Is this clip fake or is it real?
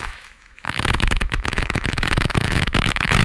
fake